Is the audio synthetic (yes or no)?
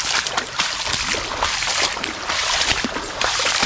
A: no